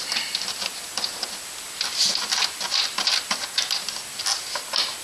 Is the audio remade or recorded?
recorded